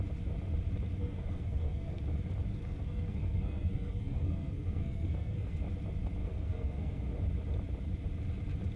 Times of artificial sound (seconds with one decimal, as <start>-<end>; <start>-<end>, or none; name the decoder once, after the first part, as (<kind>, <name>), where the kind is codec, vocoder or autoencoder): 1.0-2.0 (codec, SNAC); 2.5-5.6; 6.2-7.0